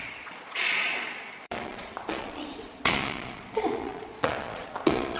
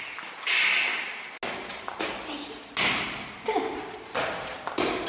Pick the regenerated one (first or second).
first